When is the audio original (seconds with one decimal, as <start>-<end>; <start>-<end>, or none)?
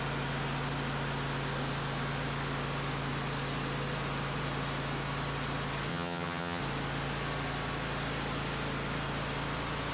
0.0-5.9; 6.6-9.9